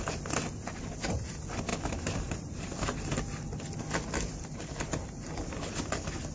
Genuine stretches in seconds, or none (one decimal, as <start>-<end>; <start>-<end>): none